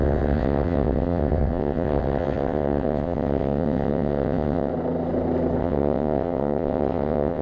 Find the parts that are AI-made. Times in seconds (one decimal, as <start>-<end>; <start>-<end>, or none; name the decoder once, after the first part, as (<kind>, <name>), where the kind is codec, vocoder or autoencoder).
0.0-4.7 (vocoder, WaveNeXt); 5.6-7.4